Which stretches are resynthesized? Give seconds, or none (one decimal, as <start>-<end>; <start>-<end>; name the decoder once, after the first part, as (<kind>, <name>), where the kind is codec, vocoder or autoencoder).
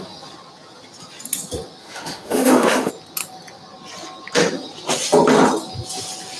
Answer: 1.8-2.9 (autoencoder, DAC-VAE)